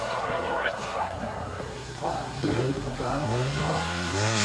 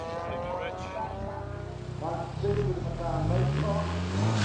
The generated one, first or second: first